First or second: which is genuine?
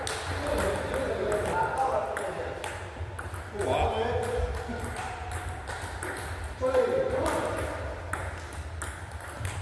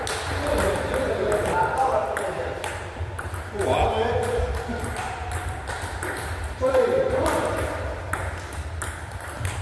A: first